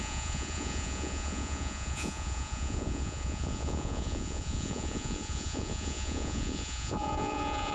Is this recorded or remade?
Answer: remade